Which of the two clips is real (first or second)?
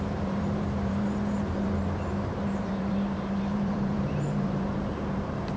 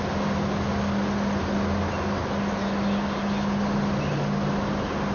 second